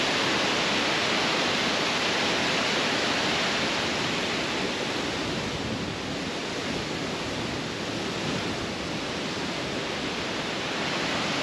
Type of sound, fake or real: real